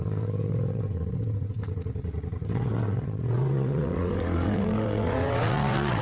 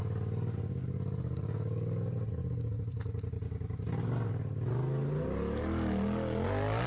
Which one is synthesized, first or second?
first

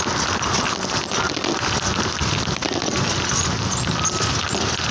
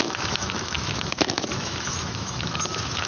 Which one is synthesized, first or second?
second